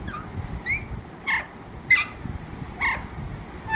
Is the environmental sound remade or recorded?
recorded